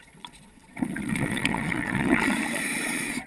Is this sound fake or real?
fake